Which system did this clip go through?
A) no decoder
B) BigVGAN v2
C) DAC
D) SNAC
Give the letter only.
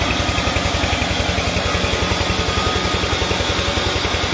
A